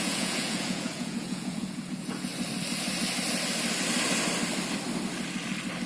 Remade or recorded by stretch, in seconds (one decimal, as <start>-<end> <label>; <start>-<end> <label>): 0.0-2.3 remade; 2.3-5.9 recorded